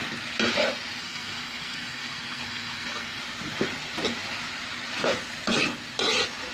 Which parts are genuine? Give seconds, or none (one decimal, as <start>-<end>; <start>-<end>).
0.0-1.0; 3.2-6.5